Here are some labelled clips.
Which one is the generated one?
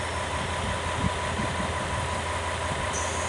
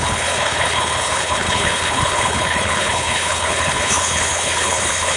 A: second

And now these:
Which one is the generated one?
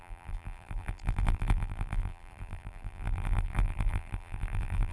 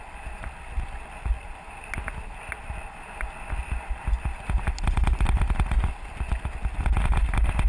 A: first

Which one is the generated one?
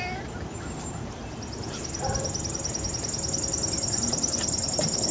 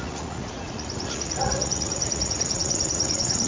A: second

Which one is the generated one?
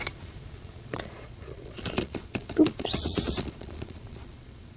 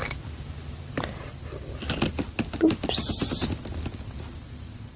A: first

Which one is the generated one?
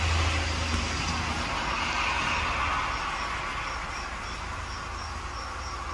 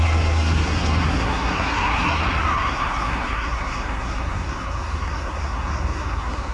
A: second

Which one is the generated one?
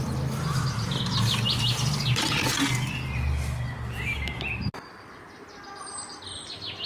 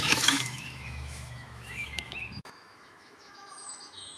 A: second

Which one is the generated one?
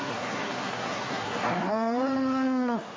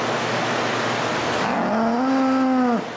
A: first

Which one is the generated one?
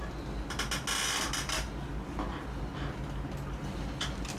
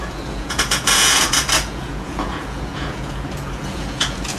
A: second